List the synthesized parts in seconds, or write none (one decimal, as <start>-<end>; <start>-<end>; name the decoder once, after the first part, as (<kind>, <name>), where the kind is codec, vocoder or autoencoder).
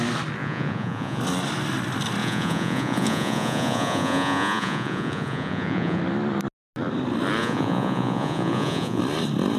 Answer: 0.4-1.2 (vocoder, Vocos); 2.2-6.0; 7.4-9.0